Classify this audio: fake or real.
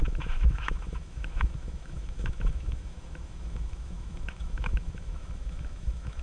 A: fake